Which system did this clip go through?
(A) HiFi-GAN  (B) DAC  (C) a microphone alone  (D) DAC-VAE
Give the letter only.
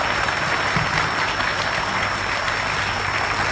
C